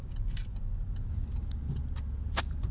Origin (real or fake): real